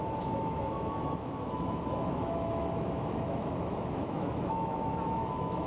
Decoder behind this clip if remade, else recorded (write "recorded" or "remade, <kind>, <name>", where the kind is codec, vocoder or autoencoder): remade, autoencoder, DAC-VAE